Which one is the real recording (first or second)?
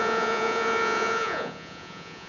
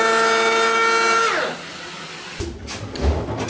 second